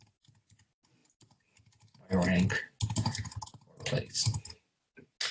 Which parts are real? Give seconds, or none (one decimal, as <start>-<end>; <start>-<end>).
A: 0.0-5.3